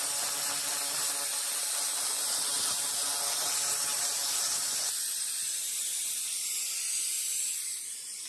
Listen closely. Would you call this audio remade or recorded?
recorded